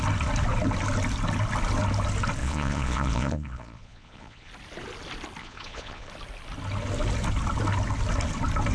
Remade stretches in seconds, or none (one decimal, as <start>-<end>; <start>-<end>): 2.4-4.5; 5.4-6.1